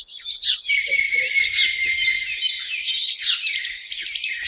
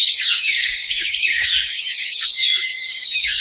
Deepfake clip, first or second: second